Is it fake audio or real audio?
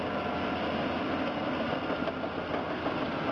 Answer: real